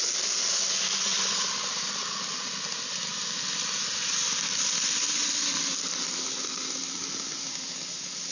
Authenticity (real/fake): real